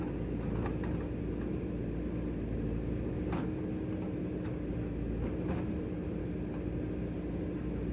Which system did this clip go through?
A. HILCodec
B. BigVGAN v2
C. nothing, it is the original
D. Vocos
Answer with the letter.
C